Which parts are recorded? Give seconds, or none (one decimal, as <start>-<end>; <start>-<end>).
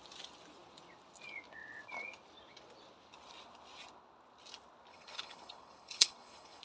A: 0.0-4.9